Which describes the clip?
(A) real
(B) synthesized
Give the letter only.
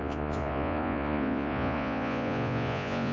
B